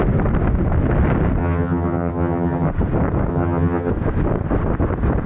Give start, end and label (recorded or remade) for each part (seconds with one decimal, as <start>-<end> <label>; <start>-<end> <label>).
0.0-1.4 recorded; 1.4-2.7 remade; 2.7-3.3 recorded; 3.3-3.9 remade; 3.9-5.3 recorded